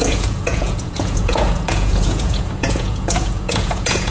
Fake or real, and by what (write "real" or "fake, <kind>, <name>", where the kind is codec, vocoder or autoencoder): fake, vocoder, Vocos